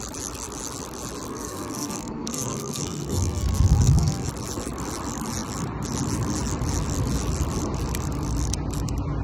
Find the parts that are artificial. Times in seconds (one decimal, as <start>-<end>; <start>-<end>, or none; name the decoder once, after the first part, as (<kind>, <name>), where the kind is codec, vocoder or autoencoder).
1.3-4.3 (codec, SNAC)